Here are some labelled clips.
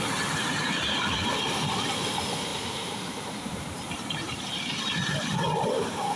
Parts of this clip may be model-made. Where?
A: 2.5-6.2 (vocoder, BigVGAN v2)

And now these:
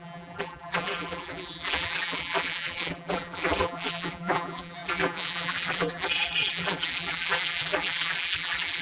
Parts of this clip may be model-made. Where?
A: 0.0-8.8 (vocoder, BigVGAN v2)